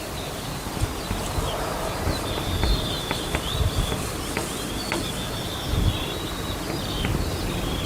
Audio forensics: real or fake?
real